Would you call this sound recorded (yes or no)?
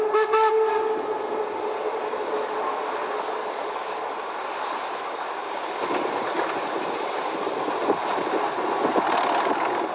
yes